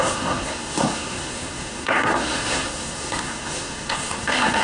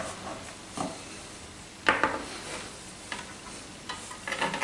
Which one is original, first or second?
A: second